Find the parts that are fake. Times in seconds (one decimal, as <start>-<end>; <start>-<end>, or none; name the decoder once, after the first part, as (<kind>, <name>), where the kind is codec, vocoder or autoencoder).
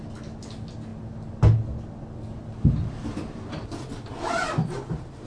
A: none